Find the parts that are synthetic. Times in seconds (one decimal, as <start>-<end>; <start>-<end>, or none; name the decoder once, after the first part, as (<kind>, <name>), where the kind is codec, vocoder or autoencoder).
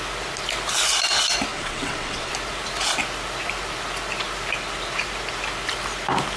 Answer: 1.5-2.3 (vocoder, WaveNeXt)